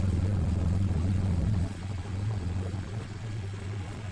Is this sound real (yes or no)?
no